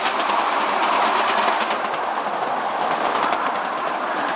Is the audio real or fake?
real